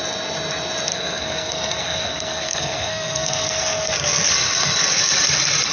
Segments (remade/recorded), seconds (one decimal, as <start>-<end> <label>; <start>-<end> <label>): 0.0-0.9 recorded; 0.9-3.9 remade; 3.9-5.7 recorded